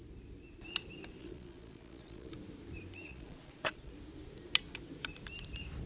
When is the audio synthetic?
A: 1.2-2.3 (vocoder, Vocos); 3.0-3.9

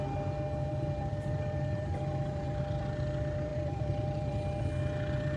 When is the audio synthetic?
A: 0.7-2.6 (vocoder, BigVGAN v2); 3.5-4.4

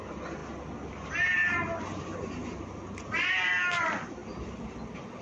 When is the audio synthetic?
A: none

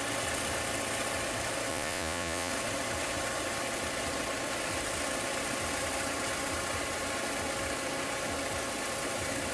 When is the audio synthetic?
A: 1.7-2.5 (vocoder, Vocos)

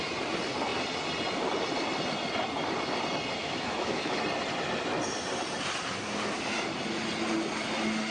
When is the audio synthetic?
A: 3.4-4.2 (autoencoder, DAC-VAE)